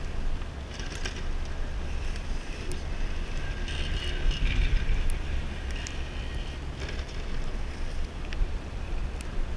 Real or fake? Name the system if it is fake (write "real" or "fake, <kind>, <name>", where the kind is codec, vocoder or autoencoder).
fake, vocoder, BigVGAN v2